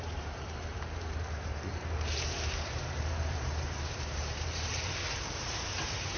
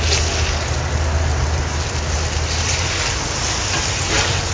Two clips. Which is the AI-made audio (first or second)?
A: first